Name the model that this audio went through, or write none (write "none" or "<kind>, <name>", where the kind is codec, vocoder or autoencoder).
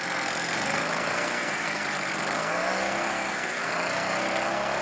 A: codec, SNAC